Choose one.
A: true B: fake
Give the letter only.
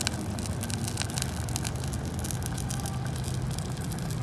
A